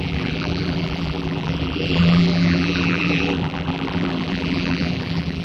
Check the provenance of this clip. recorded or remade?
remade